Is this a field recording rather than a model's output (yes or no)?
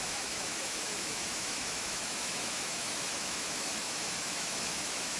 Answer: no